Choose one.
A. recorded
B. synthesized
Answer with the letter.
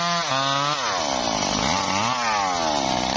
A